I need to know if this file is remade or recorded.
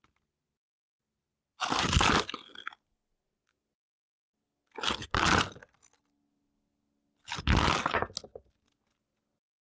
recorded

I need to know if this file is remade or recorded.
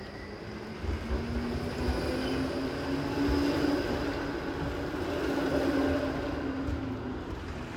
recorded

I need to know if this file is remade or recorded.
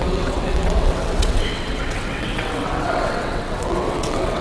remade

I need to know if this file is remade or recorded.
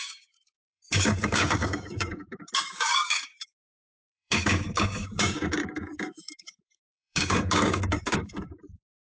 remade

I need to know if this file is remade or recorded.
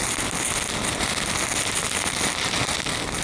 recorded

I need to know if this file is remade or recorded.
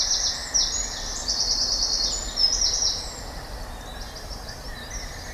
recorded